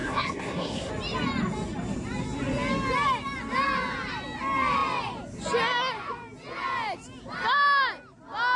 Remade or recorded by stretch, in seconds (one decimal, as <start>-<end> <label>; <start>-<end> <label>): 0.0-0.9 remade; 0.9-8.6 recorded

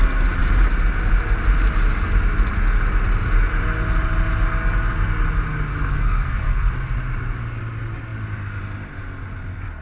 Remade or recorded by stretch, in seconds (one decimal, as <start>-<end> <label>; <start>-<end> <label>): 0.0-5.7 recorded; 5.7-6.7 remade; 6.7-9.8 recorded